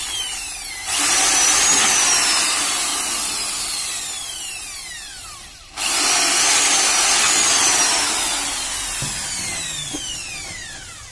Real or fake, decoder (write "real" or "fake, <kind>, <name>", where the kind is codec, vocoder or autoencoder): real